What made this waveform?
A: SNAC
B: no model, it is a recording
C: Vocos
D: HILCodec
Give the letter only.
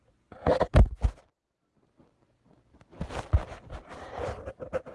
B